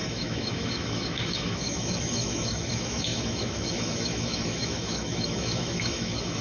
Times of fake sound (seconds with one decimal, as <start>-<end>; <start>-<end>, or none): 0.0-6.4

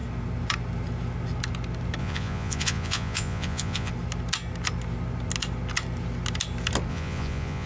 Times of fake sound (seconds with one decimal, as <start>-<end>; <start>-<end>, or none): 2.0-3.9; 6.9-7.7

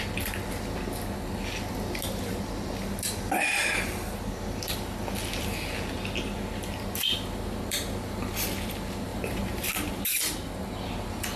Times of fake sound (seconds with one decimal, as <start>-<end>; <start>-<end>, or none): 9.1-9.7

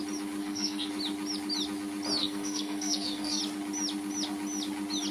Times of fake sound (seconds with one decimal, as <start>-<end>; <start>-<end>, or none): 0.4-0.9; 2.2-3.4

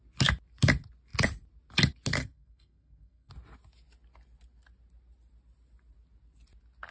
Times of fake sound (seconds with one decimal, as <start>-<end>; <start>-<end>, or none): 2.2-3.3

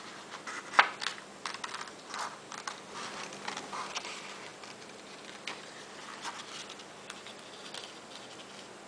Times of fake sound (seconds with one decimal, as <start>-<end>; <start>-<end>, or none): none

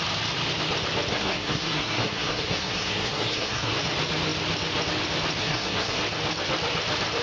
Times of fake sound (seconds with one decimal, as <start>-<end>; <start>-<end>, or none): 1.1-3.7; 5.4-6.0